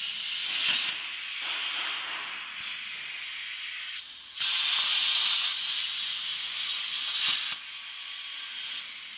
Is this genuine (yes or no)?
yes